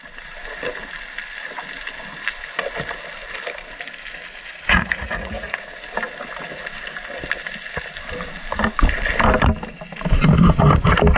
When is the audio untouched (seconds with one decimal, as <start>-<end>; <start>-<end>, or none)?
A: 0.0-4.5; 5.6-11.2